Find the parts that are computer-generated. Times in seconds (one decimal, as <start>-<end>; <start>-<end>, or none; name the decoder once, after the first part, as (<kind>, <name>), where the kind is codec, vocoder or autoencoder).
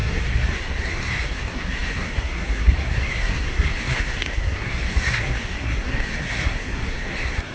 0.0-7.5 (codec, SNAC)